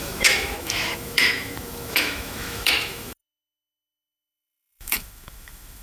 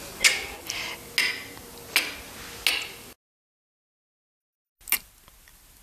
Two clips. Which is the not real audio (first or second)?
first